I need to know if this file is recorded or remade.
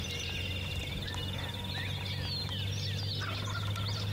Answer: recorded